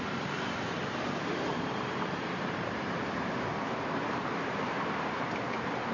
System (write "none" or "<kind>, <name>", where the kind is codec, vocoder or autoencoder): vocoder, BigVGAN v2